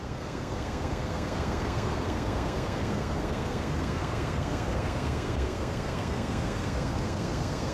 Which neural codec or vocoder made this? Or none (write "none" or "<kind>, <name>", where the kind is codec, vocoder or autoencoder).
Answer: codec, SNAC